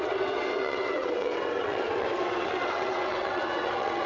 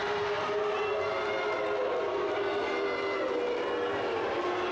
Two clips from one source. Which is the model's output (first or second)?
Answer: first